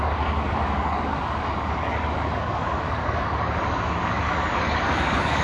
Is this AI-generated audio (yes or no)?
yes